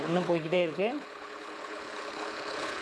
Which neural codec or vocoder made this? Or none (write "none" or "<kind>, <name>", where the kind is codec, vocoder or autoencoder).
codec, HILCodec